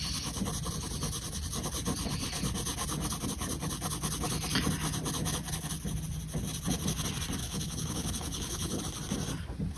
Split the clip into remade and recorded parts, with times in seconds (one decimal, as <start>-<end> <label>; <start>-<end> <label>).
0.0-7.4 recorded; 7.4-8.8 remade; 8.8-9.8 recorded